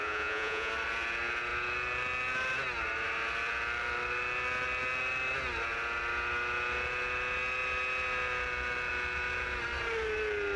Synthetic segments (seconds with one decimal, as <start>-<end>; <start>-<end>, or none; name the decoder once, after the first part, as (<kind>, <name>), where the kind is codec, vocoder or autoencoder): 0.0-0.7 (vocoder, Vocos)